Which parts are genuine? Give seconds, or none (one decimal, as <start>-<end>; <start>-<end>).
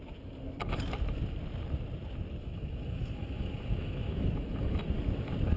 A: 0.0-2.4; 4.8-5.6